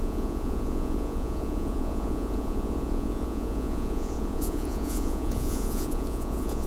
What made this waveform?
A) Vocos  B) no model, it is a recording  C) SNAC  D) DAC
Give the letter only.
A